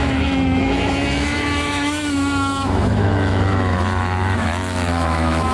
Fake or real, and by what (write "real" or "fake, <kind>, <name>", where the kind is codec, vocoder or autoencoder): fake, autoencoder, DAC-VAE